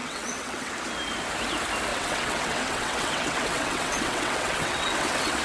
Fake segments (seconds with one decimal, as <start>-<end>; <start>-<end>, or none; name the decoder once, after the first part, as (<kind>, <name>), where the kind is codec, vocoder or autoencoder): 0.0-0.7 (vocoder, WaveNeXt); 1.9-5.4